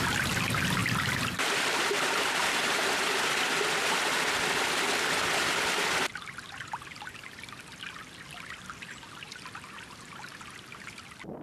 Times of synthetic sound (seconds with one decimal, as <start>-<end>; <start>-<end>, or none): 0.8-5.5